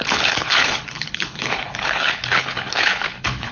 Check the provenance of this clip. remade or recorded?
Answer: remade